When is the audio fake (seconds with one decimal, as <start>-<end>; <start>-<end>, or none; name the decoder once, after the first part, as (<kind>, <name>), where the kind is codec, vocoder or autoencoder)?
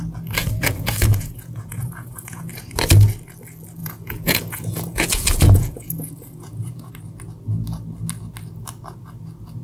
0.4-2.5 (vocoder, Vocos); 3.8-6.9